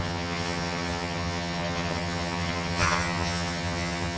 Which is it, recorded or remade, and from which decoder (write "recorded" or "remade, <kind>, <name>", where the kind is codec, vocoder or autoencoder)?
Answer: remade, vocoder, HiFi-GAN